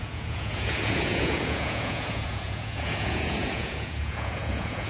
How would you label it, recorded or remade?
remade